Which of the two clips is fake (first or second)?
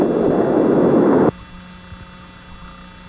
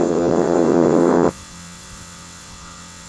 second